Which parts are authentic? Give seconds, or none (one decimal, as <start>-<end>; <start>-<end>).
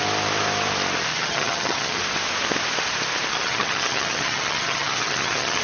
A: 0.0-1.1; 2.0-3.3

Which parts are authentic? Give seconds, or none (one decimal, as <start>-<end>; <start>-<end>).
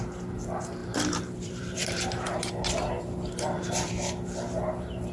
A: 0.0-0.8; 3.9-5.1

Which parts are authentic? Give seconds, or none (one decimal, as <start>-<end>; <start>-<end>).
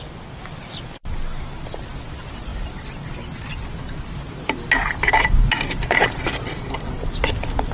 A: 0.0-7.7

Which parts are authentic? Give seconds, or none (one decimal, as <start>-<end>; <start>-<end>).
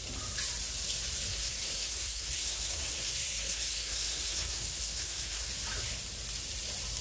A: 0.0-1.3; 5.5-7.0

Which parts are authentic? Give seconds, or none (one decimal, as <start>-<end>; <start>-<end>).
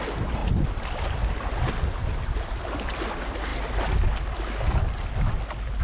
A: 0.0-5.8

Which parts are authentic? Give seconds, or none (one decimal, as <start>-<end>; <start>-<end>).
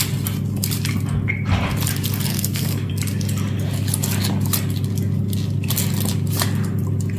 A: 0.0-2.3; 2.9-7.2